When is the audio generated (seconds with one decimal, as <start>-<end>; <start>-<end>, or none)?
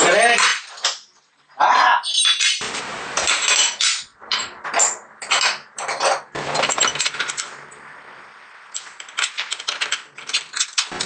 none